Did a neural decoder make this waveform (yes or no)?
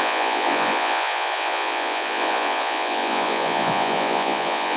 yes